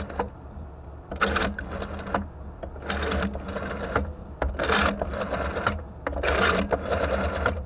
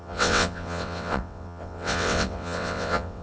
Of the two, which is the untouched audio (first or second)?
first